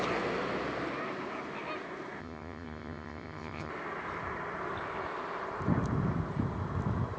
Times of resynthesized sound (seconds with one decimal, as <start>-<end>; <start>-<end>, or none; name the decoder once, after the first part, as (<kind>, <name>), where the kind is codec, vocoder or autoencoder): 2.2-3.7 (vocoder, HiFi-GAN)